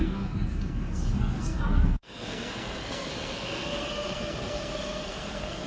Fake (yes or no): yes